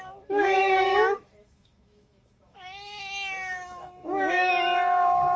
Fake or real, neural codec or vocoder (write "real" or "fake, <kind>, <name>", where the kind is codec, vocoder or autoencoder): fake, autoencoder, DAC-VAE